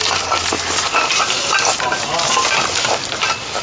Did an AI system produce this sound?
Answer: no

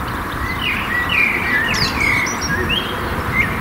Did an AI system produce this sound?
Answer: no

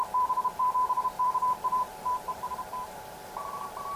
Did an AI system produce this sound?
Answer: yes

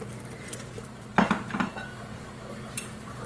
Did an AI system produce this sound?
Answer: yes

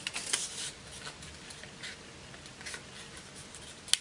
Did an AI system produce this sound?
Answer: no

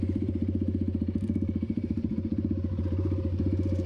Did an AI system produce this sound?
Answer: yes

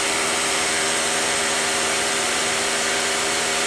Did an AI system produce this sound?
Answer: yes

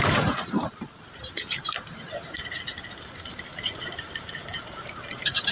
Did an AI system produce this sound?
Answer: yes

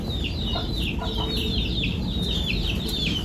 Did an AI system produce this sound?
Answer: yes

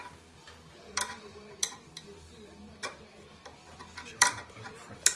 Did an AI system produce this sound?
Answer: yes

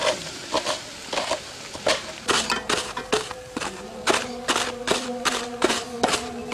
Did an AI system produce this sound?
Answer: yes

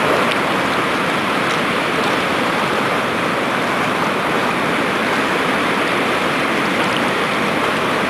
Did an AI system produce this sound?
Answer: no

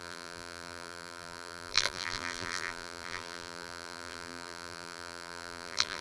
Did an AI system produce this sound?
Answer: yes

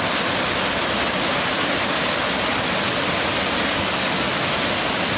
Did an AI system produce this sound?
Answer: no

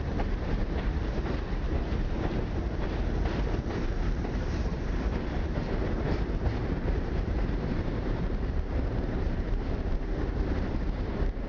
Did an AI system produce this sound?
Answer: yes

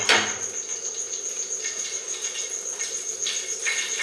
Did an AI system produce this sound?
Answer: no